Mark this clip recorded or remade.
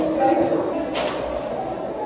recorded